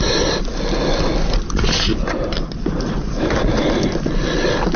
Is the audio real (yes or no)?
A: yes